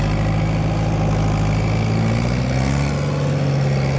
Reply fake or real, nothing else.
real